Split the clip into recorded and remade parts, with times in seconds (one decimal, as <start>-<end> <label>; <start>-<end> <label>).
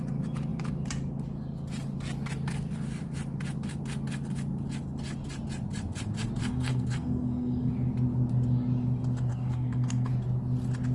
0.0-6.4 recorded; 6.4-7.7 remade; 7.7-9.3 recorded; 9.3-10.1 remade; 10.1-10.9 recorded